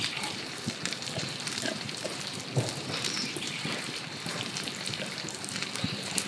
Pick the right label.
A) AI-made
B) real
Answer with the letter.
A